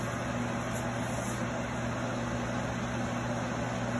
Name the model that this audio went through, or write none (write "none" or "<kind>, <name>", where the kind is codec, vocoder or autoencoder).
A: none